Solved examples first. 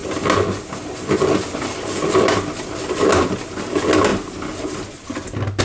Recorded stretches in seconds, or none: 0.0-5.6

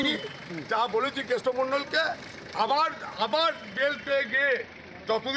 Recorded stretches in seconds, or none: 1.4-5.4